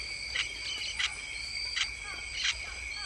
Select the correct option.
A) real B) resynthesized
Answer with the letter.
A